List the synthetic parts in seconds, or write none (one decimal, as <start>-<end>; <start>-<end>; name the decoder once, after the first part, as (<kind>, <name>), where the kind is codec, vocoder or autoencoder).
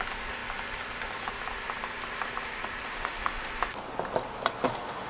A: 2.9-3.5 (autoencoder, DAC-VAE); 4.6-5.1